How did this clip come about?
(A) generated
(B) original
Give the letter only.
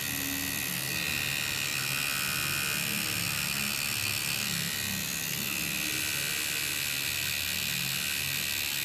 B